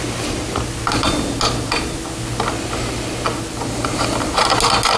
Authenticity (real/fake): real